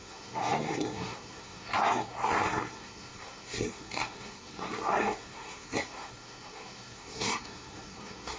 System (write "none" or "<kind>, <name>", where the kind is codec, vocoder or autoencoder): codec, SNAC